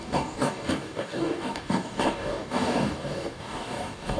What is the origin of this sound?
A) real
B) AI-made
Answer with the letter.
B